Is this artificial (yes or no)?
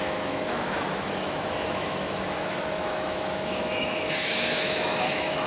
yes